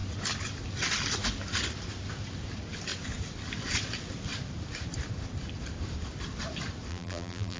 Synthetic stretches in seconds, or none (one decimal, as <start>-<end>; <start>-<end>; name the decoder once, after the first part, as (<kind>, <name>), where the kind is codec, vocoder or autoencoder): 6.9-7.6 (vocoder, BigVGAN v2)